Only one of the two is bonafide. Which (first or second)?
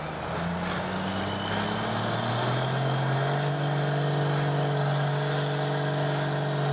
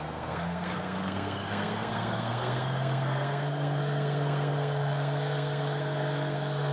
first